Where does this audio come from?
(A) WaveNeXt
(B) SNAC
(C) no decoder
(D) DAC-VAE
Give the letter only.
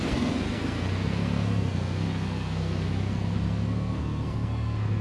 B